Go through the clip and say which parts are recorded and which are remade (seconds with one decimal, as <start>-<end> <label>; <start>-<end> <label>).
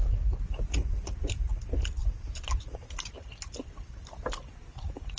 0.0-5.2 recorded